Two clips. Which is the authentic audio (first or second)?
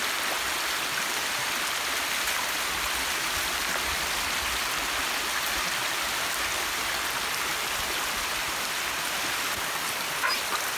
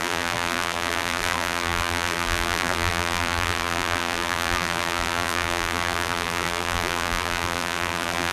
first